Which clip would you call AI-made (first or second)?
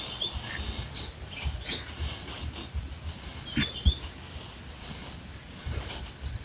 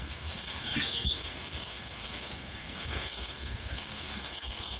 second